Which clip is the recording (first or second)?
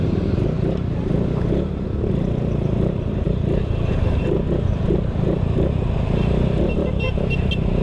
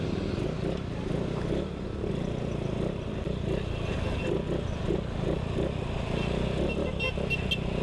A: second